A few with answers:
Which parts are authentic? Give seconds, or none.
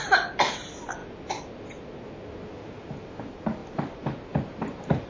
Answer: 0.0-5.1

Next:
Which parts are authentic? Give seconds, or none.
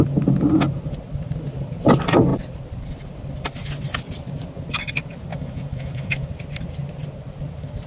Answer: 0.0-5.3; 6.3-7.9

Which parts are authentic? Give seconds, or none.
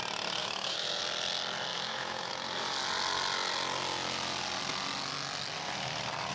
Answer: 0.0-0.4; 1.0-1.7; 2.3-6.3